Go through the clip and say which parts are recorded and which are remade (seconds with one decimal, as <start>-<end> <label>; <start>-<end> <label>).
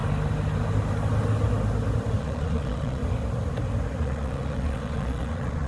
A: 0.0-2.2 recorded; 2.2-3.0 remade; 3.0-4.0 recorded; 4.0-5.7 remade